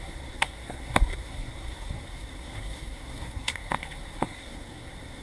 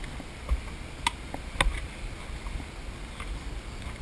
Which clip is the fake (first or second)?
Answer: first